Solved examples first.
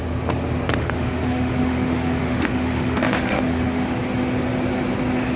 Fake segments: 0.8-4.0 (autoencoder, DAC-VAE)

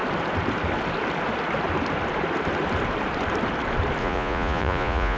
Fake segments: 4.0-5.2 (vocoder, Vocos)

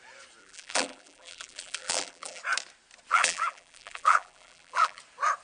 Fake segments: 0.4-2.4 (vocoder, BigVGAN v2); 3.1-5.0

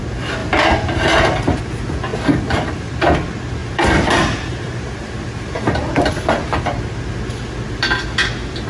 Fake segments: 0.4-1.6 (vocoder, BigVGAN v2); 2.1-2.9; 3.6-6.6

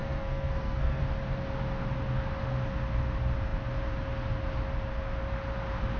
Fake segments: 0.0-1.0 (codec, SNAC)